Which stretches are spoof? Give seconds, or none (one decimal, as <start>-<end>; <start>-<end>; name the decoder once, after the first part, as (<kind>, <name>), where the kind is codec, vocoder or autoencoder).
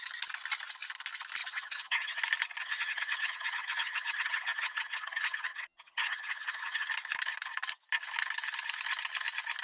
1.4-2.2 (vocoder, HiFi-GAN); 2.6-6.9